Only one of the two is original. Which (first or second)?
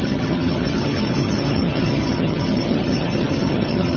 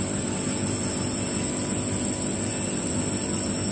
second